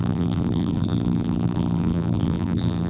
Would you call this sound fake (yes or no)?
yes